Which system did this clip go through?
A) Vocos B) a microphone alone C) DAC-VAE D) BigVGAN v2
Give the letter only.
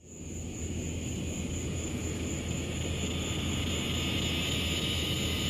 B